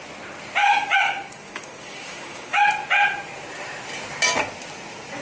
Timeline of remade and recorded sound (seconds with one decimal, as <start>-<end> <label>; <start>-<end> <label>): 0.0-0.6 recorded; 0.6-2.6 remade; 2.6-5.2 recorded